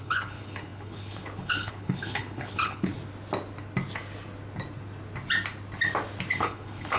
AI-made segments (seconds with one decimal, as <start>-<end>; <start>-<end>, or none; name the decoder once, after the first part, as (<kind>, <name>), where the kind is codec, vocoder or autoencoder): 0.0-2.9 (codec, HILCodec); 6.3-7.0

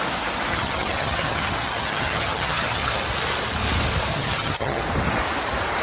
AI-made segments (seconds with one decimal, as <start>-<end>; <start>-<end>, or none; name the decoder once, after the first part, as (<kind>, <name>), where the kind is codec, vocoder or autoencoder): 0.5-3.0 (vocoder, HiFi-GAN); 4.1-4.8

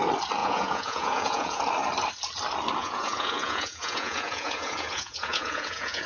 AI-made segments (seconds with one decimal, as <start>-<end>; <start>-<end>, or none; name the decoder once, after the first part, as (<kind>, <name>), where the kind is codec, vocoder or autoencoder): 0.4-1.6 (vocoder, Vocos); 2.8-6.1